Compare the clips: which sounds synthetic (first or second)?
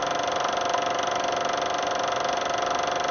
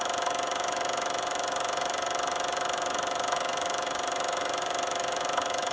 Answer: second